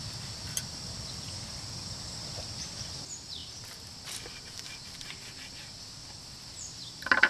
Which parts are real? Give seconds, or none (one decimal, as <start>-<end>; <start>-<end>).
0.0-7.3

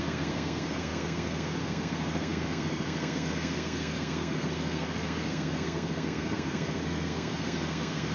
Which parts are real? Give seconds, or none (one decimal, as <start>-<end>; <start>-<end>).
none

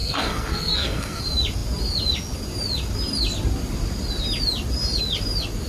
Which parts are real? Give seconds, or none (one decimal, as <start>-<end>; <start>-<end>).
1.2-5.7

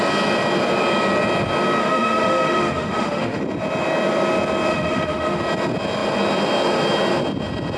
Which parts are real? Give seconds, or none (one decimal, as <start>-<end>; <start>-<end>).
0.0-1.8; 3.4-4.7; 5.4-7.8

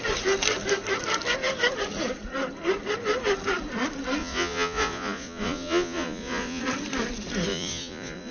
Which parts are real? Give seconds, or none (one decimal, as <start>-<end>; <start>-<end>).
0.0-4.2; 6.6-7.5

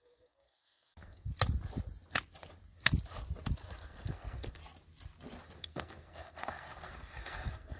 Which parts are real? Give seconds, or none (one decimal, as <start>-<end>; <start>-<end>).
1.3-3.8; 4.6-5.6

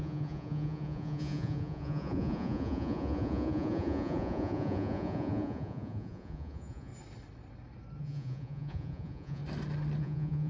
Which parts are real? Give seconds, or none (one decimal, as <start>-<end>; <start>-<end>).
6.9-8.0; 9.4-10.0

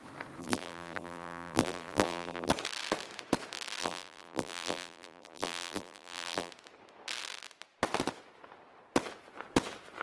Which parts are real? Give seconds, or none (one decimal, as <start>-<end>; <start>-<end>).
0.0-0.4; 2.5-3.8; 6.5-10.0